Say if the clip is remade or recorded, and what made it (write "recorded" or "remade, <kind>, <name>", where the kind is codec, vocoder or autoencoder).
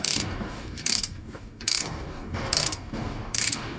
remade, codec, DAC